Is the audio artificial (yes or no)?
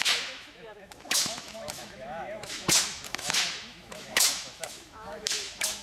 yes